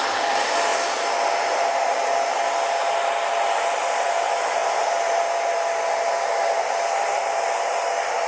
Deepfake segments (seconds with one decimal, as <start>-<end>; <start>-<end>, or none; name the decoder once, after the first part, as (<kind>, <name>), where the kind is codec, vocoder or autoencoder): none